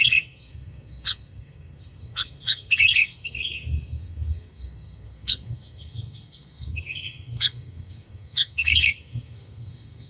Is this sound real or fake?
fake